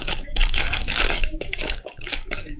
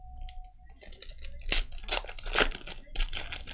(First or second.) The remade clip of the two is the first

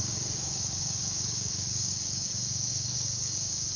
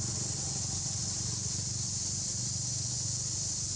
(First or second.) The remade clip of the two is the first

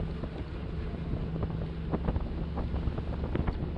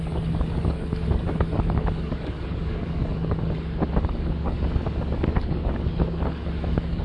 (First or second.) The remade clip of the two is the second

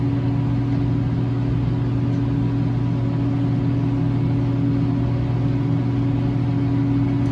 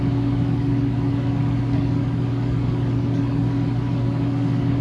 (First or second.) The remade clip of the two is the second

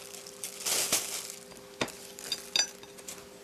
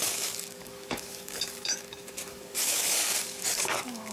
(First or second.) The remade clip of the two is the second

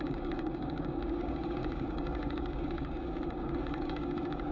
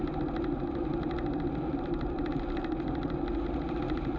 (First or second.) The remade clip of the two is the first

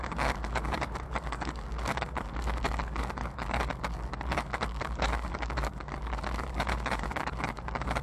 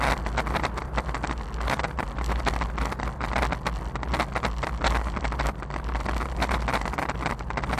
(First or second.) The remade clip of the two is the first